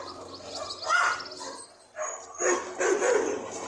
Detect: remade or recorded recorded